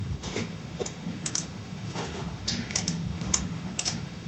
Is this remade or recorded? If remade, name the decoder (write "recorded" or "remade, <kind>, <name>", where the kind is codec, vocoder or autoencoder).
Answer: remade, autoencoder, DAC-VAE